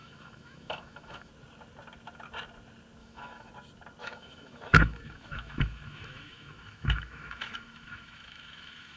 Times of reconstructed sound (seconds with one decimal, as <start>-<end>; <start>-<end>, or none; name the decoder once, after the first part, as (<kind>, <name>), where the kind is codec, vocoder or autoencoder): 0.0-1.3 (autoencoder, DAC-VAE); 3.0-3.5; 4.0-9.0